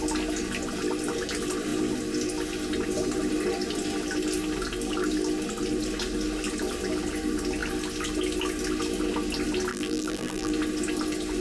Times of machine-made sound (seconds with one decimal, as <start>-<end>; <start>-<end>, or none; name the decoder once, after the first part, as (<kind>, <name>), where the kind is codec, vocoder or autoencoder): 9.7-10.5 (vocoder, BigVGAN v2)